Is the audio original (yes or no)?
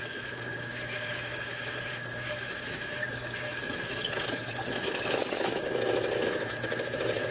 no